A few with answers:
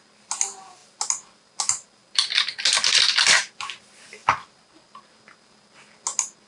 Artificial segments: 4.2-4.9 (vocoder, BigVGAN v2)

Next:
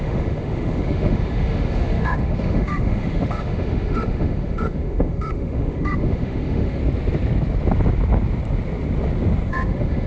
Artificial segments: 0.0-6.8 (autoencoder, DAC-VAE); 9.5-10.1

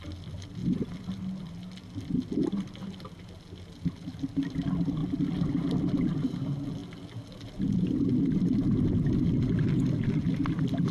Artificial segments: none

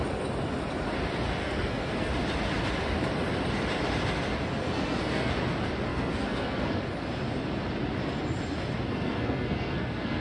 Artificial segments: 1.4-2.1 (codec, SNAC); 4.6-5.3; 5.9-6.8; 8.9-10.2

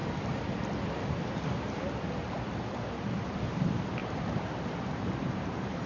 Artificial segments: 4.0-5.9 (vocoder, BigVGAN v2)

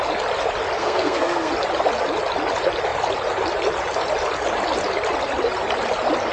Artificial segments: 0.8-1.5 (codec, SNAC)